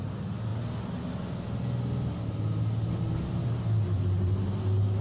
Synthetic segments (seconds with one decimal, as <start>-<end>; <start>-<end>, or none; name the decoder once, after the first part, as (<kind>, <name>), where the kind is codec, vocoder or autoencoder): none